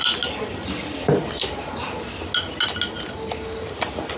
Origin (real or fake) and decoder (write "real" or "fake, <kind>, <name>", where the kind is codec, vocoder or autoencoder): real